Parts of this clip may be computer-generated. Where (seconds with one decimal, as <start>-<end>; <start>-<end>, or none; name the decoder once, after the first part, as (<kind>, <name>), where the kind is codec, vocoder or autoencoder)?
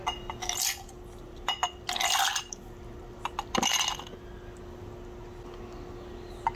none